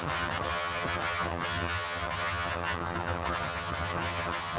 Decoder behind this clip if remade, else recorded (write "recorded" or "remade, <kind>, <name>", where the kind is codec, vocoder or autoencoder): remade, vocoder, HiFi-GAN